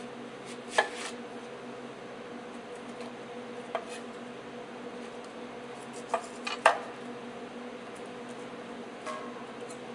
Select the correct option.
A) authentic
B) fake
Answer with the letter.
A